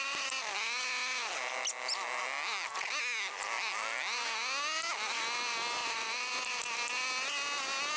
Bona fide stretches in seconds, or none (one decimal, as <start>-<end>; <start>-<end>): 0.0-5.8; 6.6-8.0